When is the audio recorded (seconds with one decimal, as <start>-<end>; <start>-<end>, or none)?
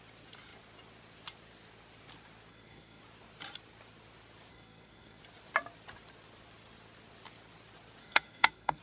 0.0-2.5; 3.0-4.5; 5.2-8.0